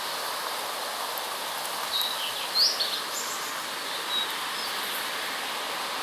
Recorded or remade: recorded